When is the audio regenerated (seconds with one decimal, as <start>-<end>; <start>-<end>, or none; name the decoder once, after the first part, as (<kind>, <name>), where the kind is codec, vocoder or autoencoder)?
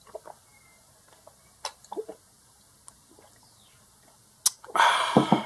none